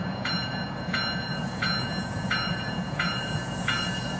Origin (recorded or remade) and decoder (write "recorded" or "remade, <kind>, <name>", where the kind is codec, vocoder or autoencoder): remade, vocoder, Vocos